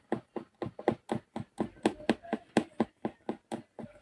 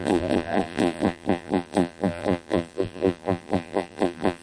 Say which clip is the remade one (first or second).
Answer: second